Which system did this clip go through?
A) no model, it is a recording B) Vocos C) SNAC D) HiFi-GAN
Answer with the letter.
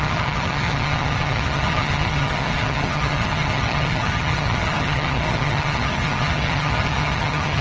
D